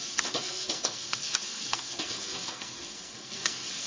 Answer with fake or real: fake